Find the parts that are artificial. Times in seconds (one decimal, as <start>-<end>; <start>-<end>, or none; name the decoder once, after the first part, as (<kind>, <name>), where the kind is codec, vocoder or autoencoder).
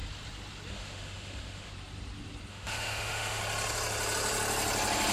0.7-1.7 (autoencoder, DAC-VAE); 2.5-3.4